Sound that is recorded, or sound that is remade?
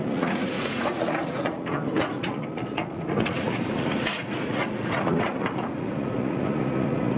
remade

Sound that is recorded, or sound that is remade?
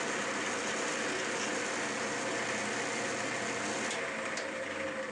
recorded